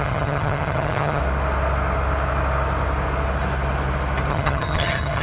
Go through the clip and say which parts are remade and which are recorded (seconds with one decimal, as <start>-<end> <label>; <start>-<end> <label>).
0.0-1.2 remade; 1.2-4.3 recorded; 4.3-5.2 remade